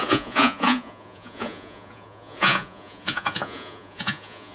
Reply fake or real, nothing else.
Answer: fake